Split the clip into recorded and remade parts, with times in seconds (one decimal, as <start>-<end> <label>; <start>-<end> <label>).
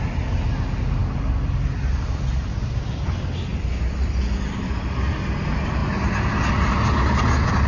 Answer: 0.0-1.0 recorded; 1.0-2.6 remade; 2.6-3.5 recorded; 3.5-4.2 remade; 4.2-7.7 recorded